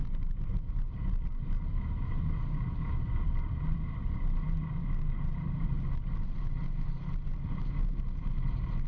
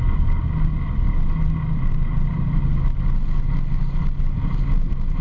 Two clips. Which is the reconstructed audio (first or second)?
first